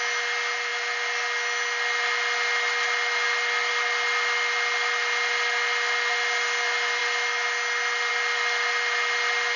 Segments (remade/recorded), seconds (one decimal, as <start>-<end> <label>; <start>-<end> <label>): 0.0-9.6 recorded